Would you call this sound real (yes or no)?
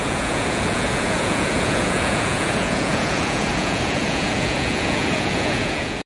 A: no